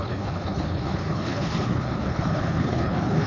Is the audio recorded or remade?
remade